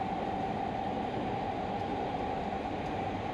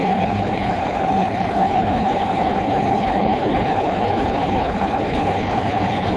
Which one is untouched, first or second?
first